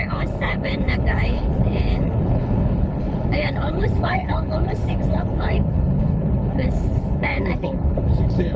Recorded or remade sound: remade